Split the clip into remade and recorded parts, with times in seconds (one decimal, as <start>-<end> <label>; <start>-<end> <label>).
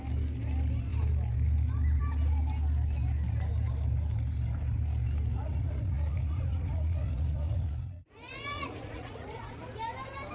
0.0-5.3 recorded; 5.3-9.5 remade; 9.5-10.3 recorded